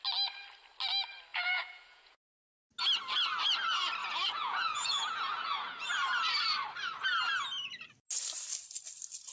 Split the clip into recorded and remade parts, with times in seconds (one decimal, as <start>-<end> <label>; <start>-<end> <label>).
0.0-1.3 recorded; 1.3-2.4 remade; 2.4-4.0 recorded; 4.0-5.9 remade; 5.9-9.3 recorded